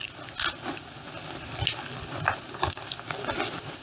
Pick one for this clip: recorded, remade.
recorded